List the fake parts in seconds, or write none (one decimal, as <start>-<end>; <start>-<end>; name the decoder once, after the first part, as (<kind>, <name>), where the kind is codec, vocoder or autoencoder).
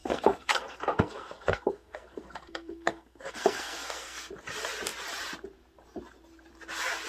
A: 0.0-4.3 (codec, SNAC)